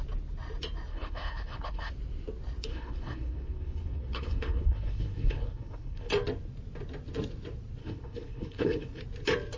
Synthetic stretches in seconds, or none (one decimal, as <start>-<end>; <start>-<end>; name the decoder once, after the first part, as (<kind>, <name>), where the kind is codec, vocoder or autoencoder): 0.9-1.9 (codec, HILCodec); 2.7-6.1; 7.8-9.0